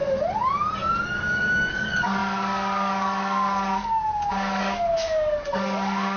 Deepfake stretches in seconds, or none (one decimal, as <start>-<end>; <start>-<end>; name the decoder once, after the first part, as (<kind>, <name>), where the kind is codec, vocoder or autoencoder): 1.0-6.2 (codec, DAC)